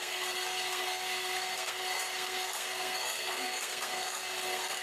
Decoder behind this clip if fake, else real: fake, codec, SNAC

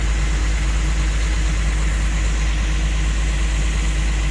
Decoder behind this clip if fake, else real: real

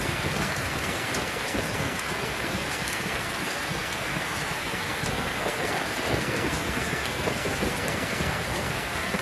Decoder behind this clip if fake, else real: fake, codec, SNAC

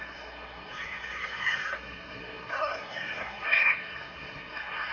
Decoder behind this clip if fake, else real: fake, codec, SNAC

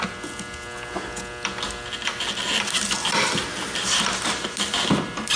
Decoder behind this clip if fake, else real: real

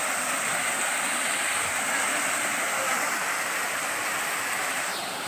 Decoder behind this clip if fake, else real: real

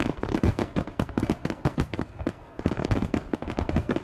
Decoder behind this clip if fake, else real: fake, codec, SNAC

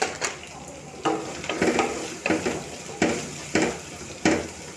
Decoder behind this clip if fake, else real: real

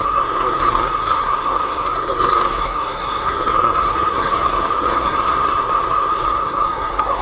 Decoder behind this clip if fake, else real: fake, codec, SNAC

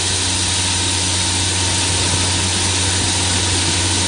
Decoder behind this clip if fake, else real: real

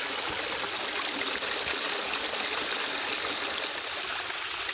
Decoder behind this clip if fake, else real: real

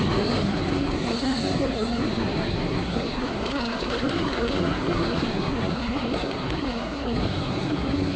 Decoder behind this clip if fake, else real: fake, codec, SNAC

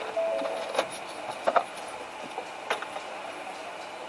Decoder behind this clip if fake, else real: real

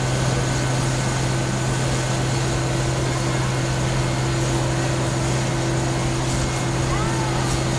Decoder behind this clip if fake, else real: real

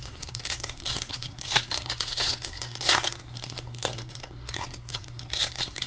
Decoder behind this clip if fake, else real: fake, codec, SNAC